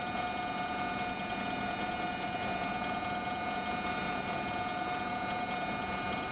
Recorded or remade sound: remade